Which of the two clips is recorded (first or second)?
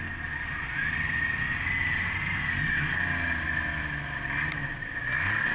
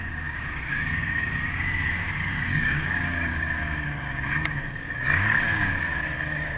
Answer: first